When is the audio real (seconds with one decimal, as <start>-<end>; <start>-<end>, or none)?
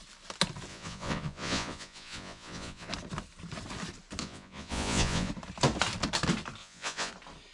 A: 0.0-0.7; 2.9-4.2; 5.3-6.6; 7.1-7.5